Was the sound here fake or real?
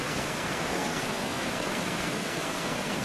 fake